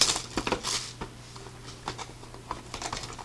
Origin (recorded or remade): recorded